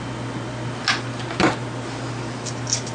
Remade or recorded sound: recorded